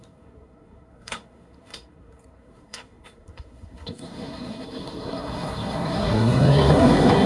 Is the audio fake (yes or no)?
yes